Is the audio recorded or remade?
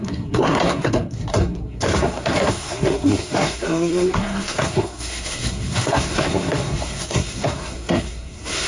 remade